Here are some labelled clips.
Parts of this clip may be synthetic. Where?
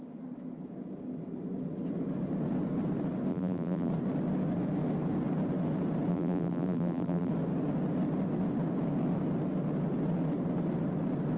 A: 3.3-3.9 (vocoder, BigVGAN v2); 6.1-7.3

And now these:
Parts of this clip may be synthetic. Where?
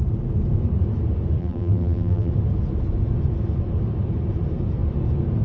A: 1.4-2.3 (vocoder, BigVGAN v2)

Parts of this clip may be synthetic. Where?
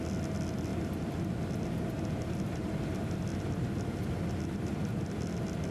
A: none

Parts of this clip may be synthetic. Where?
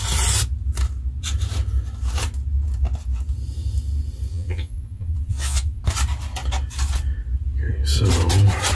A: 4.3-5.8 (vocoder, Vocos)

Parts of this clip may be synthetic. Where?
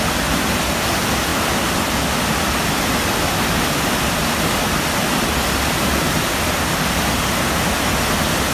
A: 1.3-6.4 (vocoder, BigVGAN v2)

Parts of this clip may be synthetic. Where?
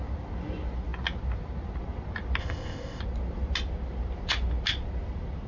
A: 2.4-3.0 (codec, ZipCodec)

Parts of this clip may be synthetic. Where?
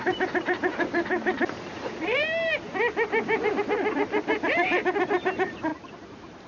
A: 0.0-6.5 (vocoder, BigVGAN v2)